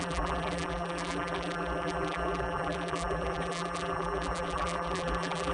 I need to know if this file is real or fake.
fake